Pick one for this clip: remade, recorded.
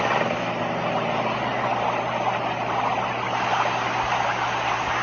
recorded